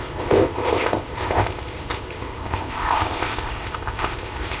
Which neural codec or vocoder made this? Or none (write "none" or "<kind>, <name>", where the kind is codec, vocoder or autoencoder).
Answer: codec, ZipCodec